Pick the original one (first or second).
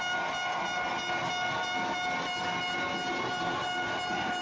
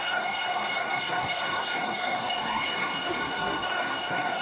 first